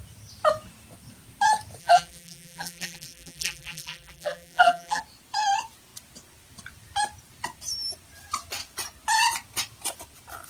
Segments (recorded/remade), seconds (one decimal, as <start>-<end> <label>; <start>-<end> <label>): 0.0-1.8 recorded; 1.8-5.0 remade; 5.0-10.5 recorded